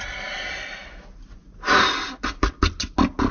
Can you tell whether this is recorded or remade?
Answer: recorded